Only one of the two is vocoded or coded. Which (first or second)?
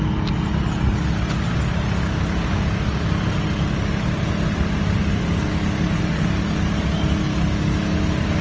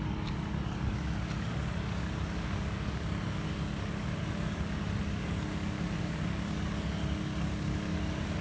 second